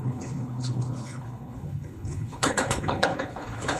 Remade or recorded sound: remade